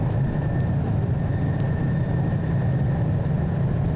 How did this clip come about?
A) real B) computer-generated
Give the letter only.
B